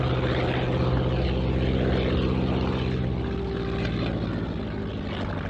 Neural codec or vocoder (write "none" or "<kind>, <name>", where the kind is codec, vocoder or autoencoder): none